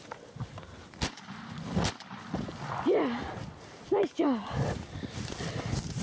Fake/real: real